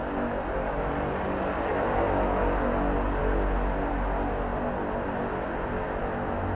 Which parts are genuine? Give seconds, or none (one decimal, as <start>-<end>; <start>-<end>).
0.0-6.5